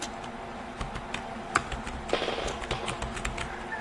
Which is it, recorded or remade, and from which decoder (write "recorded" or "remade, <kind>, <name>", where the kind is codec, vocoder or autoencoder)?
recorded